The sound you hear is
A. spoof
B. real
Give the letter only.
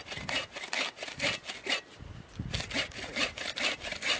B